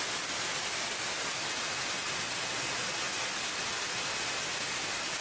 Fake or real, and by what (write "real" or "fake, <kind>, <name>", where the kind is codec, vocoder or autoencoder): real